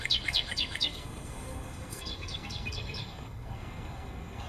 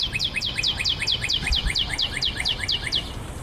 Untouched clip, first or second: second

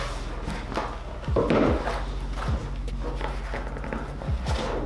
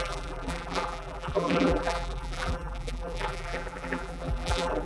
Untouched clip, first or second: first